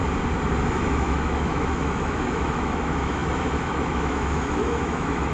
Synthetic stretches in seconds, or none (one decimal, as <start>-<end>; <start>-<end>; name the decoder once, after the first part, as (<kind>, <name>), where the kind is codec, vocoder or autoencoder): 0.7-5.3 (autoencoder, DAC-VAE)